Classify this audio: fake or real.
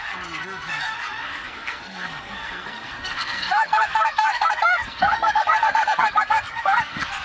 fake